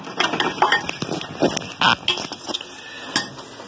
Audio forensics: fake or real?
real